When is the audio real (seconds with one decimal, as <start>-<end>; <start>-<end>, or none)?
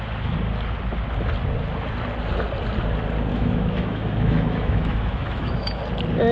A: 0.0-3.3; 5.8-6.3